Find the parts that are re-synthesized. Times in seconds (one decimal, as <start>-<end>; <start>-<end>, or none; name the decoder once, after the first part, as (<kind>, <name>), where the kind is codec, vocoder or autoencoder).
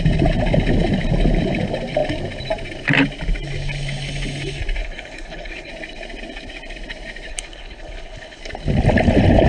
4.8-5.7 (codec, HILCodec); 7.3-8.4